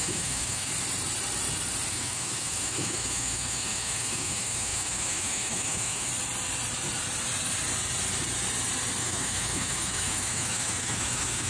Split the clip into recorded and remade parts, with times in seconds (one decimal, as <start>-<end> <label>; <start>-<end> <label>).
0.0-0.7 remade; 0.7-1.9 recorded; 1.9-6.1 remade; 6.1-9.0 recorded; 9.0-11.5 remade